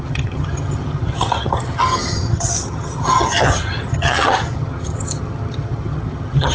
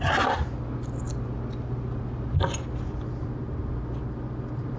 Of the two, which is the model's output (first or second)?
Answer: first